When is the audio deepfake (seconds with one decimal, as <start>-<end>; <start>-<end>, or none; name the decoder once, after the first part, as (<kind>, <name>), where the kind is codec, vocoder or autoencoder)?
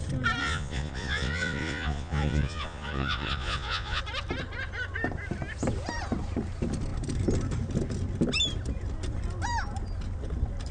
0.4-4.0 (vocoder, Vocos)